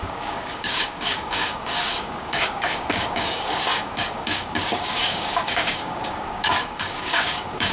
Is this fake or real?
fake